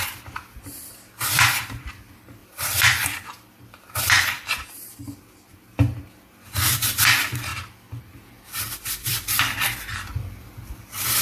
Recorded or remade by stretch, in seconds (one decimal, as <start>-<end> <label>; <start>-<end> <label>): 0.0-5.5 remade; 5.5-6.7 recorded; 6.7-11.2 remade